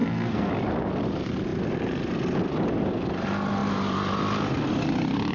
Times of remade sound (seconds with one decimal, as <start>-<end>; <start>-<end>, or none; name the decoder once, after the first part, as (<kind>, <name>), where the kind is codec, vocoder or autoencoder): 0.0-0.5 (codec, SNAC)